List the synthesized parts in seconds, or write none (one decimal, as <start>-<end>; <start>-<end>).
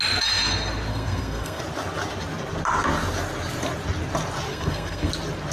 0.9-1.6; 4.5-5.1